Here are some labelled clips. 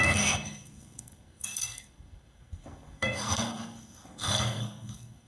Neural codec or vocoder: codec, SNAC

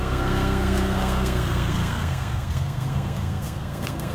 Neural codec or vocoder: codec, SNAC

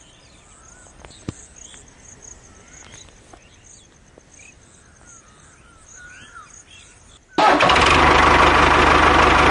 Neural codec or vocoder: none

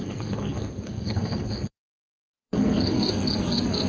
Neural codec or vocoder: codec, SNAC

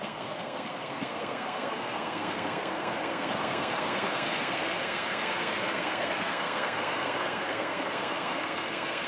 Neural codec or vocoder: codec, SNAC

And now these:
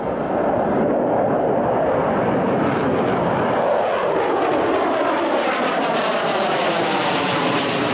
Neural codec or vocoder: none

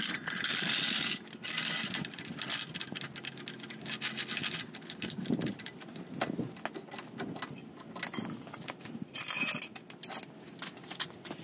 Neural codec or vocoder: none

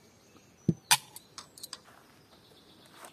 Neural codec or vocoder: none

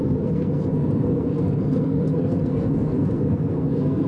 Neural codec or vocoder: codec, SNAC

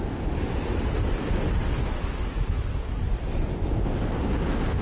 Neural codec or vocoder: none